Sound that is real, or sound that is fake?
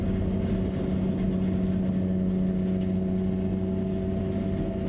real